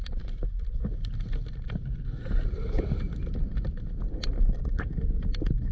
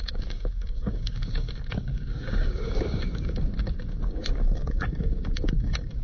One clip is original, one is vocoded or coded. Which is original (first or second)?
first